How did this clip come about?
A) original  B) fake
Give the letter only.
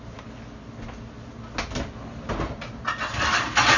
A